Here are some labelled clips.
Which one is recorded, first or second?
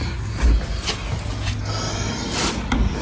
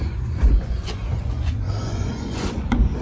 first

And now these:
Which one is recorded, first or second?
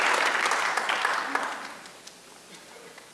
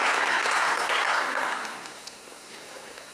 first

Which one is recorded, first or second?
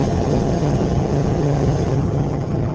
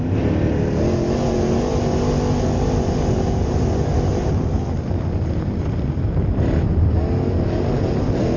second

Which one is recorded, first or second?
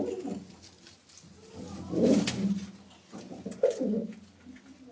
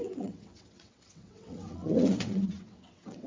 first